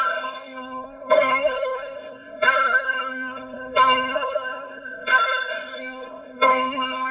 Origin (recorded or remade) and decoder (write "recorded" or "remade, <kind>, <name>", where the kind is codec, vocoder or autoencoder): remade, codec, SNAC